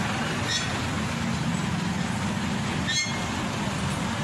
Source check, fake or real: real